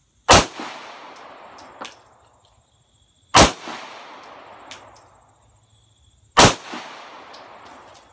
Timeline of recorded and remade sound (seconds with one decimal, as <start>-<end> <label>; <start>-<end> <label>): 0.0-8.1 recorded